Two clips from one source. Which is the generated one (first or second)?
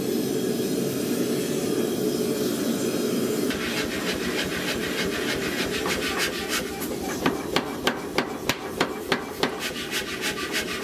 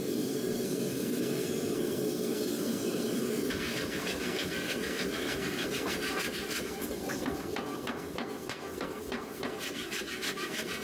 second